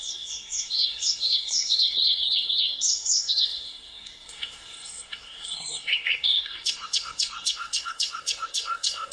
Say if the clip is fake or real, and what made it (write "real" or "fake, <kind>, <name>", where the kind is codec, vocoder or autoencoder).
fake, codec, SNAC